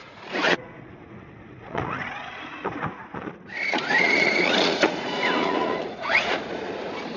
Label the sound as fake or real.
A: fake